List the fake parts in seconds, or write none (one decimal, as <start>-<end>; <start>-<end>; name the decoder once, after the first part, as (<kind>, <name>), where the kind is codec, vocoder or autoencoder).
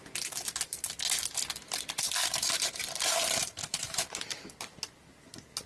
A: 1.6-4.2 (vocoder, BigVGAN v2)